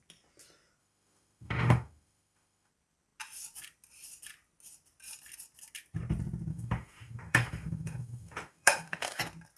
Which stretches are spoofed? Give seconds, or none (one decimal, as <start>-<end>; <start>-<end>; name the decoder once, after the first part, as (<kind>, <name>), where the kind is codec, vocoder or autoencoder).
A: 0.8-2.7 (autoencoder, DAC-VAE); 6.5-9.2